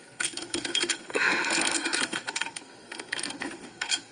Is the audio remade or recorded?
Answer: remade